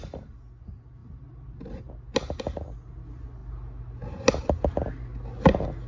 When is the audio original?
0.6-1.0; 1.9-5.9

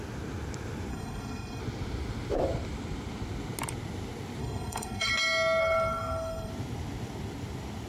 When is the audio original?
0.0-0.9; 1.6-4.4; 5.1-5.6; 6.5-7.9

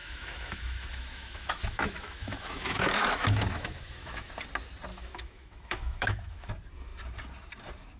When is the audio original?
4.3-4.9; 6.5-8.0

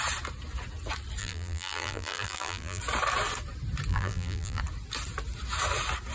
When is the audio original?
0.0-1.2; 2.8-3.9; 4.6-6.1